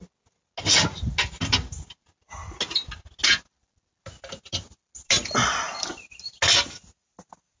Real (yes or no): yes